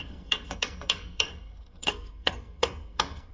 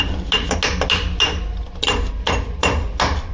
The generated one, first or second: first